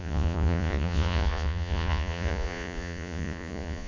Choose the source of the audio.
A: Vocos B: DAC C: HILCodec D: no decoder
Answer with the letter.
A